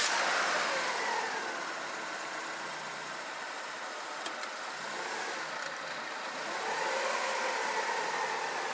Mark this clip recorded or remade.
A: recorded